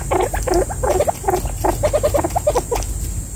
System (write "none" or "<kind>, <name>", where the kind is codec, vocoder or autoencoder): none